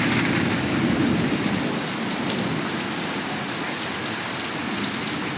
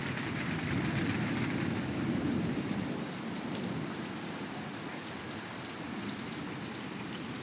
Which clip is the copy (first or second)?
second